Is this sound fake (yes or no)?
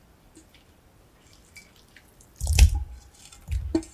yes